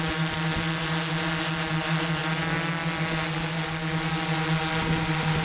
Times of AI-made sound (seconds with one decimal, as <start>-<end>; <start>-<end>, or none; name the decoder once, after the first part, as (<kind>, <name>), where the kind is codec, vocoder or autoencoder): none

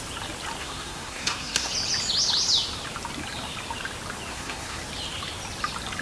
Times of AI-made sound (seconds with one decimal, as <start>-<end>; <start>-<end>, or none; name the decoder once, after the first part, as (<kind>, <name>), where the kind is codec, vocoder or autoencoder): 0.6-1.7 (codec, SNAC); 4.3-4.8

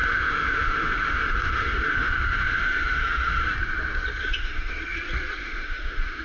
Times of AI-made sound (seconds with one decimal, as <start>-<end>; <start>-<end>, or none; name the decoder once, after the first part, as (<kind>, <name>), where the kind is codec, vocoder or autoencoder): 0.0-3.4 (autoencoder, DAC-VAE); 4.2-4.7; 5.4-6.2